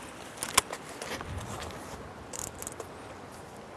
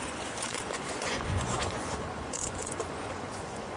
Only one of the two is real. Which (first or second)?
first